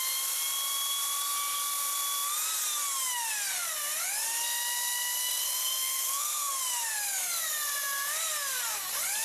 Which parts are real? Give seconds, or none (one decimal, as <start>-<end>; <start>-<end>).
0.0-5.2; 6.6-9.2